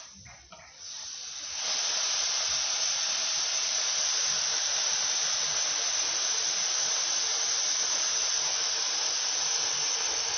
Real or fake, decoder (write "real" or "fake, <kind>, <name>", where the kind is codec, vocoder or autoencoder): fake, vocoder, BigVGAN v2